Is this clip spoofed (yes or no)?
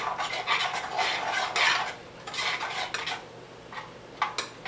no